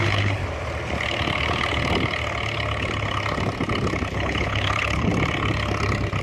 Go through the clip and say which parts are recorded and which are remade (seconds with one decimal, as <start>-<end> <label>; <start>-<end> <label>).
0.0-0.4 remade; 0.4-4.1 recorded; 4.1-5.1 remade; 5.1-6.2 recorded